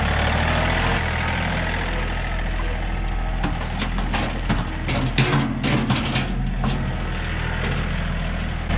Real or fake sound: real